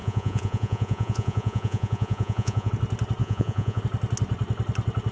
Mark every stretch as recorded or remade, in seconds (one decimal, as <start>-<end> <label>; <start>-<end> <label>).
0.0-2.7 remade; 2.7-3.2 recorded; 3.2-3.8 remade; 3.8-5.1 recorded